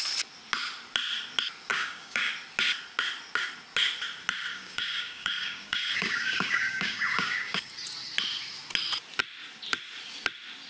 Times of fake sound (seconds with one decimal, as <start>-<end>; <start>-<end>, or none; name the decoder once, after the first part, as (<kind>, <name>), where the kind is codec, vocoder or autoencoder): 1.7-2.3 (codec, DAC); 4.5-7.7